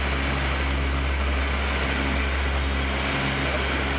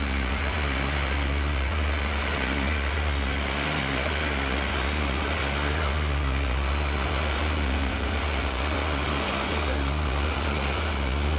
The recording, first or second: first